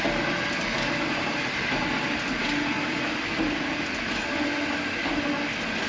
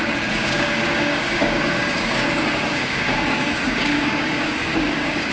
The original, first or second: first